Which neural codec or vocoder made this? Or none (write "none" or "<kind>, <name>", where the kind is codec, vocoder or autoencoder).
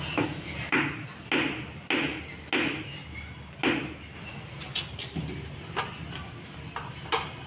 none